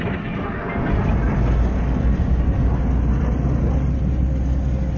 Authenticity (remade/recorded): recorded